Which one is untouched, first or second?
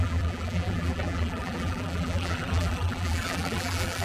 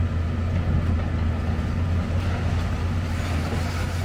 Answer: second